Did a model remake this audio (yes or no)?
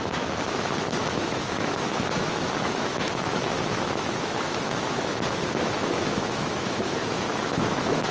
yes